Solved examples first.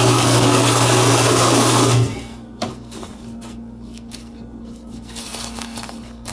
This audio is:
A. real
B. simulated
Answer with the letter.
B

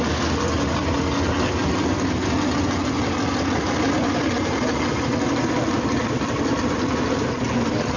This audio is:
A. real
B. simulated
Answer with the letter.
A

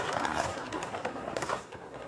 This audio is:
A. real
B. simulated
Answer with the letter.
B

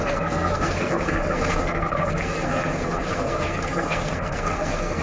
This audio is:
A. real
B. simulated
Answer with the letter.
B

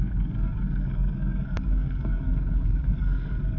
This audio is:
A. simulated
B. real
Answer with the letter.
A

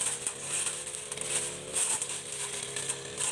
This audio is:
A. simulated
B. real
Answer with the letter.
B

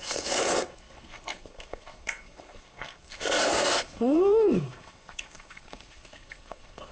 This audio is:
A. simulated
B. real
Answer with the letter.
A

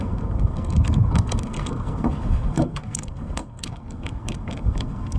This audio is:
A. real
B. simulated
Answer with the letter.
B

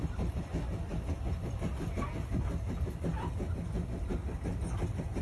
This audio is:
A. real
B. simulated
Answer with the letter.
A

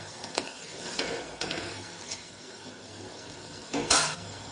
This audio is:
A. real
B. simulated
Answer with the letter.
B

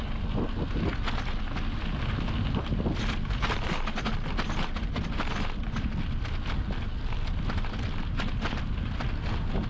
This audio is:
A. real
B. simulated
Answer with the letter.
A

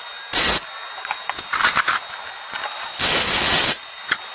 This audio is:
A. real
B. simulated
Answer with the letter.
A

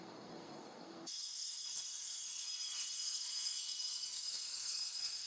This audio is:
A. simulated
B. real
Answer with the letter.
A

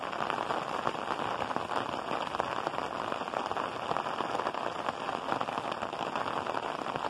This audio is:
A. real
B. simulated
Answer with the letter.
A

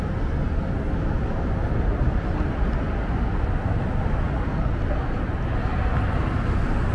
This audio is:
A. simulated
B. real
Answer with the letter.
B